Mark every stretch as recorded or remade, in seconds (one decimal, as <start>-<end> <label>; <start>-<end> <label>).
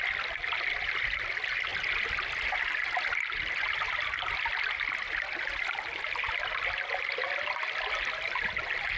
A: 0.0-9.0 recorded